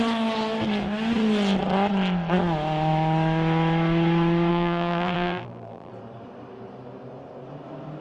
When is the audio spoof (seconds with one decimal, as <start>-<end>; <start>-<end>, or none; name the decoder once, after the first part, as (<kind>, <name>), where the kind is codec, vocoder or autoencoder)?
4.5-5.9 (vocoder, BigVGAN v2)